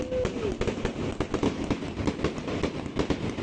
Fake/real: real